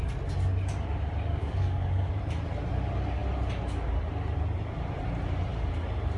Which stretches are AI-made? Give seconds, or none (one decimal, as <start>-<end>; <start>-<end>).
1.3-2.1